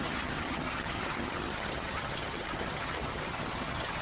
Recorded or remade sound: remade